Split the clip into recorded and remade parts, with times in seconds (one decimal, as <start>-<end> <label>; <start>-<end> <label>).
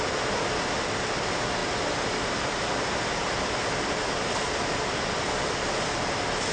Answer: 0.0-6.5 recorded